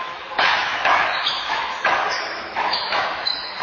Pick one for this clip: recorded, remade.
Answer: remade